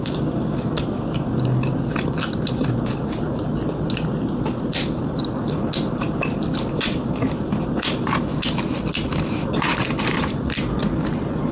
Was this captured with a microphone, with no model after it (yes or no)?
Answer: yes